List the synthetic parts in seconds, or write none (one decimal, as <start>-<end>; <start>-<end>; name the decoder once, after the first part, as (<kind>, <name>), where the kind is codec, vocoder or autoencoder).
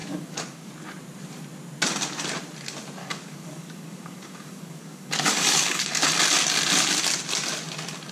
0.0-0.7 (codec, DAC); 3.0-6.1